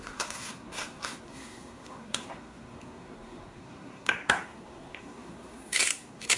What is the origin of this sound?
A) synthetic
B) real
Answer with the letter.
A